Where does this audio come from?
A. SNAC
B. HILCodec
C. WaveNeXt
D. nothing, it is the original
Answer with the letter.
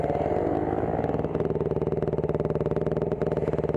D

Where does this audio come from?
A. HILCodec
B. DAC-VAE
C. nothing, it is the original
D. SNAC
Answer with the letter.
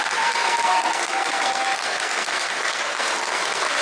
D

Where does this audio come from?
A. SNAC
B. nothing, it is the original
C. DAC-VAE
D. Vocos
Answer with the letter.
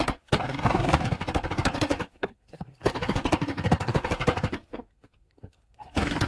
A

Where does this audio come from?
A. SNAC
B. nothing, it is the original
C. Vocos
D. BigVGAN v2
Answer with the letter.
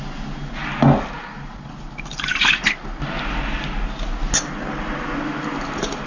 B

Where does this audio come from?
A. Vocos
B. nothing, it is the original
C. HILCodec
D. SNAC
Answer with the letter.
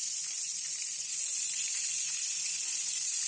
B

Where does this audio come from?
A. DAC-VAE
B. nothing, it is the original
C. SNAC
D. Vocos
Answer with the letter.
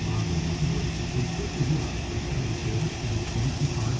B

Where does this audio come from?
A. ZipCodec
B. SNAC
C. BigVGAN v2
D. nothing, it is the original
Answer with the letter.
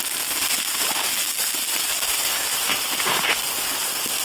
D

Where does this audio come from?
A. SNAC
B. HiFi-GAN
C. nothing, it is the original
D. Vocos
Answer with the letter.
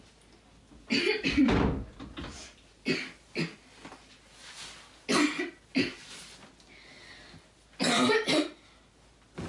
C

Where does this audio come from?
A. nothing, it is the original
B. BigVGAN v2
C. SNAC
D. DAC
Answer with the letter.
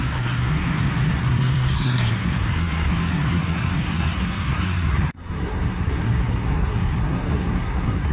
C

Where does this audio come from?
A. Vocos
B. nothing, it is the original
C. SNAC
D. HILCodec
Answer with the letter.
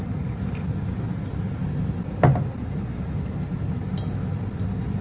B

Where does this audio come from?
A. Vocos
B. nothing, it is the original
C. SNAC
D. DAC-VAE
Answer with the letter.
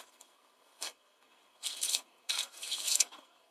C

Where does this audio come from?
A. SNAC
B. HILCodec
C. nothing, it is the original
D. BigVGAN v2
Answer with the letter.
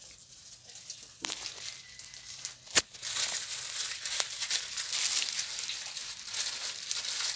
C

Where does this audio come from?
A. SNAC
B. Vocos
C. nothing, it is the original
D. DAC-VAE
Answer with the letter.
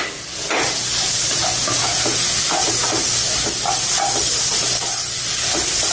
C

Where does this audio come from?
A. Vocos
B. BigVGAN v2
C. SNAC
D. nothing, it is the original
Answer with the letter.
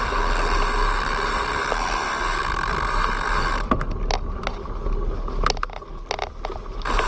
D